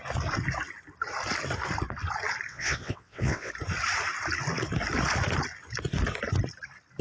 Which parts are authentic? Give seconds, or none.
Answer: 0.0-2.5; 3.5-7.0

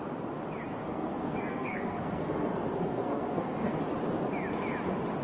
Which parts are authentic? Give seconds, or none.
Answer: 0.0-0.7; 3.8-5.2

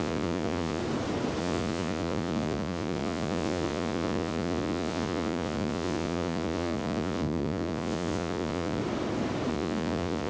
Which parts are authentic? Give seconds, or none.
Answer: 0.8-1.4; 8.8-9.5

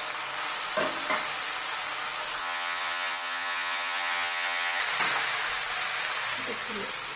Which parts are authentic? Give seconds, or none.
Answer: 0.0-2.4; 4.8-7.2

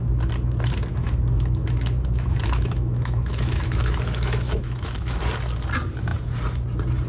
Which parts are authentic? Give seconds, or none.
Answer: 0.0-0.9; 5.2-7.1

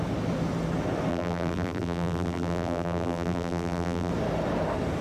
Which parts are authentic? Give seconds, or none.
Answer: 0.0-1.1; 4.1-5.0

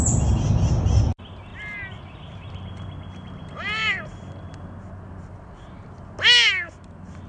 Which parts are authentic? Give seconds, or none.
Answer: 0.0-7.3